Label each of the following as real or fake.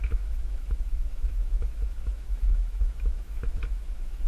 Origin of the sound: fake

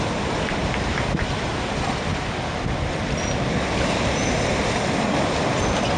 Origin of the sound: real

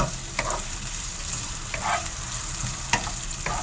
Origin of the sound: real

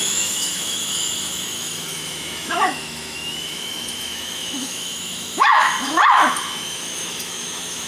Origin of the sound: fake